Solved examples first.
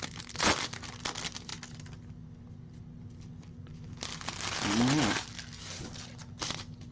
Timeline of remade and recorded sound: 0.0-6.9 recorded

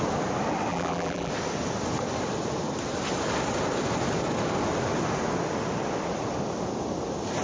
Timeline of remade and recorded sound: 0.0-0.7 recorded; 0.7-1.3 remade; 1.3-7.4 recorded

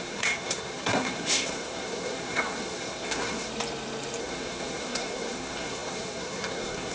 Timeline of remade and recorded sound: 0.0-3.5 remade; 3.5-4.2 recorded; 4.2-6.9 remade

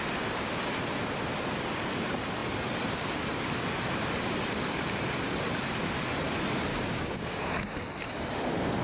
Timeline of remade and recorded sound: 0.0-6.7 recorded; 6.7-7.5 remade; 7.5-8.8 recorded